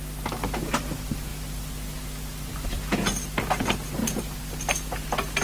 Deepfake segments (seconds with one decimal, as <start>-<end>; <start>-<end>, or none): none